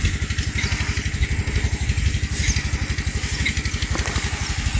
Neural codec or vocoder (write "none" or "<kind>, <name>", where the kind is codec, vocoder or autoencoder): none